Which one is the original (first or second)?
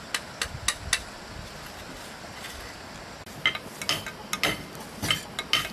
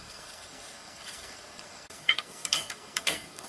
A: first